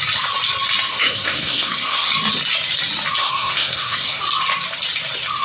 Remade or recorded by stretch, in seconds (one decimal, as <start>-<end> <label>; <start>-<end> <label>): 0.0-0.9 recorded; 0.9-2.1 remade; 2.1-3.2 recorded; 3.2-4.2 remade; 4.2-5.4 recorded